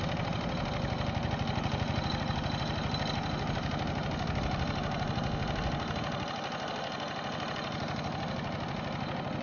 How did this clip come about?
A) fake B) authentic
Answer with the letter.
B